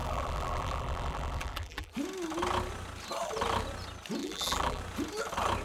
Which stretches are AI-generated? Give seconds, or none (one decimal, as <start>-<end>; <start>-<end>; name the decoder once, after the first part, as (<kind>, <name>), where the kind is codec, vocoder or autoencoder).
0.0-1.9 (vocoder, BigVGAN v2); 4.2-4.8